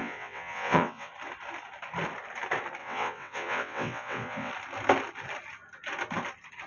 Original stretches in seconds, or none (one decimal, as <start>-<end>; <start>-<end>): 1.1-2.8; 4.5-6.7